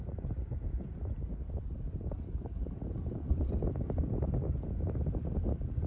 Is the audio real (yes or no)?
yes